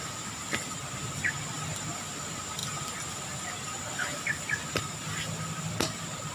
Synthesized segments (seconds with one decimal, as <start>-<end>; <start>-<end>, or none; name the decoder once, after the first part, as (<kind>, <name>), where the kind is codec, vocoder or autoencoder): none